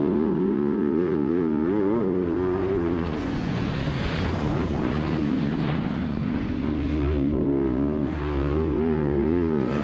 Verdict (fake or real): fake